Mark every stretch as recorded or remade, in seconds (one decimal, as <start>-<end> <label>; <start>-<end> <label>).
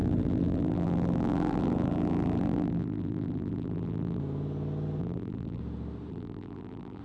0.0-4.2 remade; 4.2-5.0 recorded; 5.0-5.6 remade; 5.6-6.1 recorded; 6.1-7.0 remade